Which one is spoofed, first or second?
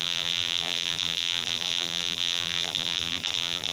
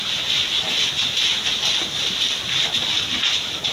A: first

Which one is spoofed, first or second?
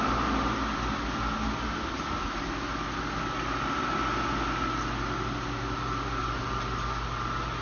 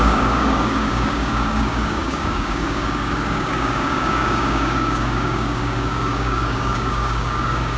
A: second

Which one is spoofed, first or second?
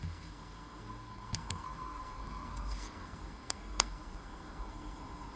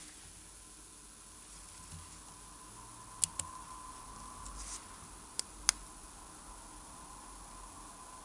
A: first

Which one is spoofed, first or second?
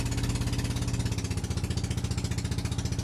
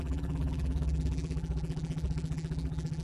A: second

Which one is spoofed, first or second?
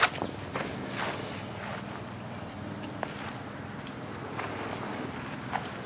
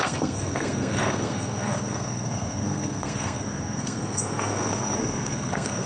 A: second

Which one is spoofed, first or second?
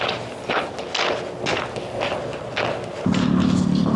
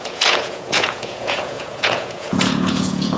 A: second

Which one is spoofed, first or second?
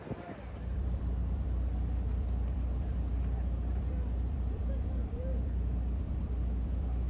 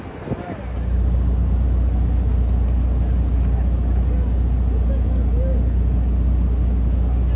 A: first